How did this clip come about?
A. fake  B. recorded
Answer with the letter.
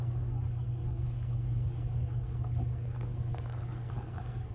A